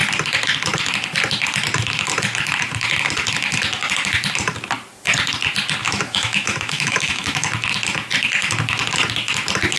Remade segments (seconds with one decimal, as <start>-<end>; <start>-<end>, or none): 5.8-7.5